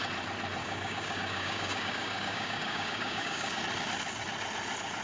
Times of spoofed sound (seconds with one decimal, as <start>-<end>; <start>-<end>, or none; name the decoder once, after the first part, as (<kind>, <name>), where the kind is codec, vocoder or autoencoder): 0.6-3.6 (codec, DAC)